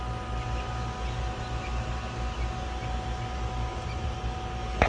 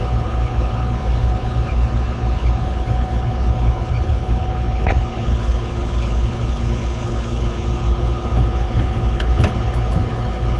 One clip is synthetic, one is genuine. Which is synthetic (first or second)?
second